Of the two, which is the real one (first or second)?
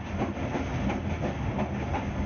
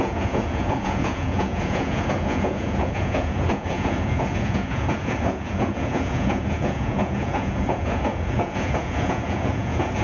first